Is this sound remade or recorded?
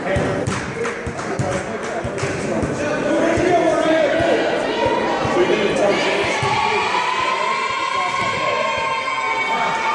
recorded